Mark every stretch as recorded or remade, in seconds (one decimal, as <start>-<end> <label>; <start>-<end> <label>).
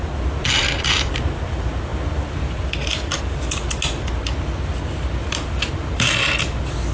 0.0-6.9 recorded